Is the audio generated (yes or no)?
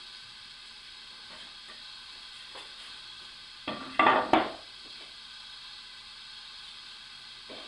no